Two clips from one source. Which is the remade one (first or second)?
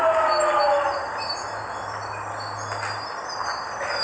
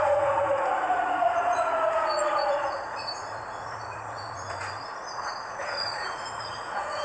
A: second